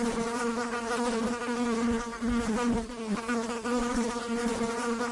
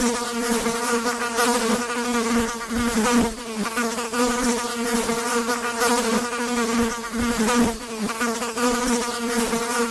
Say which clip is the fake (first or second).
first